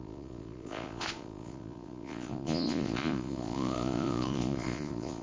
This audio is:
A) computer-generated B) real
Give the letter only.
A